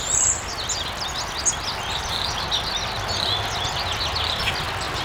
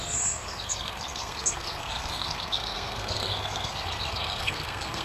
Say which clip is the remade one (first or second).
second